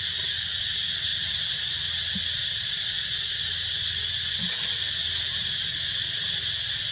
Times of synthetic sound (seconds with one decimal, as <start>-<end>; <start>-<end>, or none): 1.1-4.4; 5.0-5.7